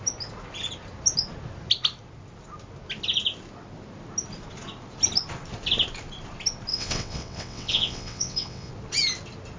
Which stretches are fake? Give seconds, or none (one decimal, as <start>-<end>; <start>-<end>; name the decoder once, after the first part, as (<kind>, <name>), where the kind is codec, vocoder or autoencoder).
6.7-8.7 (vocoder, WaveNeXt)

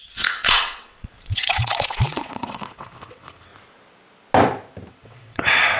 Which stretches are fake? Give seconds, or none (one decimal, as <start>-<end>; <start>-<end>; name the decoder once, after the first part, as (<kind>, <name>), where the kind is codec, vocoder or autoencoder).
0.0-3.5 (vocoder, WaveNeXt); 4.9-5.8